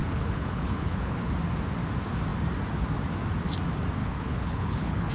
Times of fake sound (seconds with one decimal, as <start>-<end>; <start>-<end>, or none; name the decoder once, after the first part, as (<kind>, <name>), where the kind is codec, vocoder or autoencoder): 0.0-1.3 (codec, HILCodec); 4.0-5.1